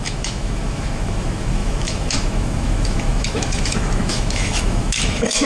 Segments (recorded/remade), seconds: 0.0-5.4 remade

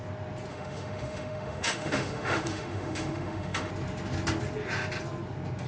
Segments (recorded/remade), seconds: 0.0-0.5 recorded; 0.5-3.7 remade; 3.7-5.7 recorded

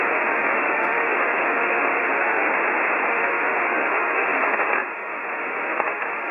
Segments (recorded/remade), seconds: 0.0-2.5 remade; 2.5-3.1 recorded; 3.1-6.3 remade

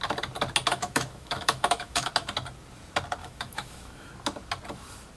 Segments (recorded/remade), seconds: 0.0-0.7 recorded; 0.7-2.1 remade; 2.1-3.2 recorded; 3.2-4.1 remade; 4.1-5.2 recorded